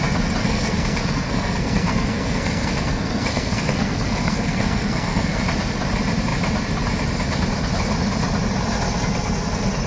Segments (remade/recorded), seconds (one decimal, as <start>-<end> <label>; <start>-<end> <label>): 0.0-0.4 recorded; 0.4-5.4 remade; 5.4-9.9 recorded